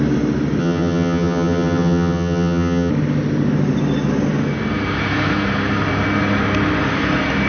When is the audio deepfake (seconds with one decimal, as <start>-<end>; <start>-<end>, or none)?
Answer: 0.6-2.9